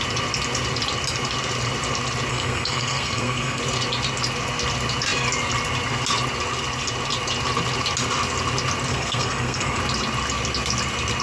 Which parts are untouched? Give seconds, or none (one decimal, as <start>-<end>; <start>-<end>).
0.0-2.3; 3.6-8.9; 9.8-11.2

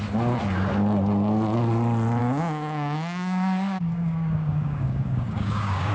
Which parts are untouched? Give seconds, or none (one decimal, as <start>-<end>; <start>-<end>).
0.0-2.2

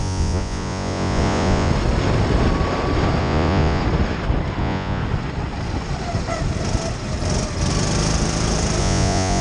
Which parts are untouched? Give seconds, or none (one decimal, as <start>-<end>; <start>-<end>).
1.7-3.2; 3.8-4.6; 5.0-8.8

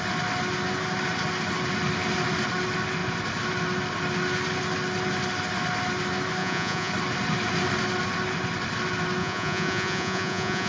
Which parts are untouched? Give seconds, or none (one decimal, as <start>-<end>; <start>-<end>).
0.0-6.4; 6.9-9.2

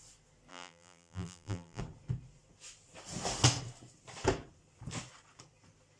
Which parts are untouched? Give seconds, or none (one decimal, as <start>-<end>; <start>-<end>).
0.0-0.5; 1.8-6.0